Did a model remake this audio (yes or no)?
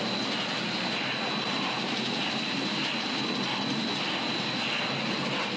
no